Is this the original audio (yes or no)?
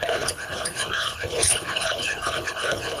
no